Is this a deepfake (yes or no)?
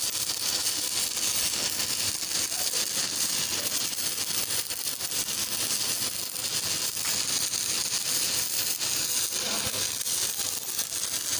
no